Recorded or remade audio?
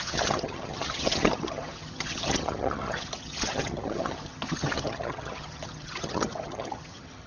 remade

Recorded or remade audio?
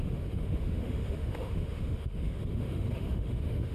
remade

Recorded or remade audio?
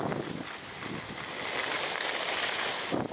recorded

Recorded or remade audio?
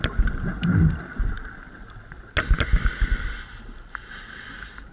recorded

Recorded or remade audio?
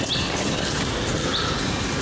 recorded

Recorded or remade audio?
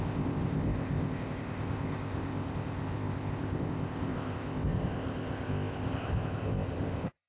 remade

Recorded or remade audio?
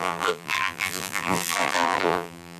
remade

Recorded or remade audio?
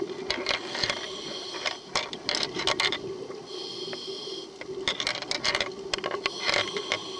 recorded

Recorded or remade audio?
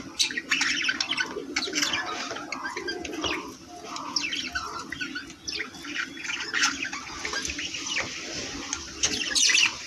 recorded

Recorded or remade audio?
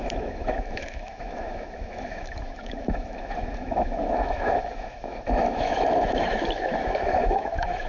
remade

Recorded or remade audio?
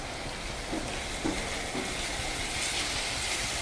recorded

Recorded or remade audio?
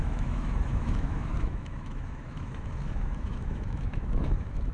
remade